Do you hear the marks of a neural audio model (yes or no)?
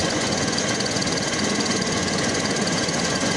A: yes